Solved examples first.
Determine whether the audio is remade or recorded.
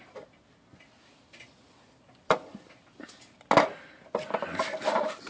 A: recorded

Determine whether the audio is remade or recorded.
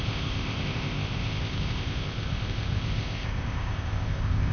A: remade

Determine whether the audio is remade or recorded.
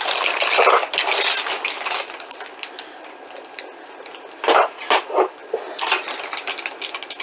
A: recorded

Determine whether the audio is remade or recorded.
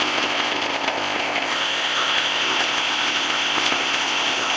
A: remade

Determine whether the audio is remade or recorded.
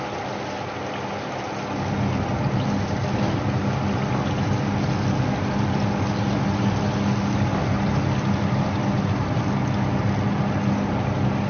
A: recorded